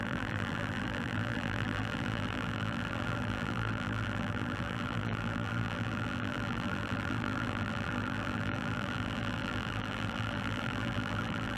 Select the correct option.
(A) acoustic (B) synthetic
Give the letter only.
B